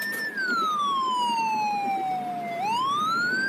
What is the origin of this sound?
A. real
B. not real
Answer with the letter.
A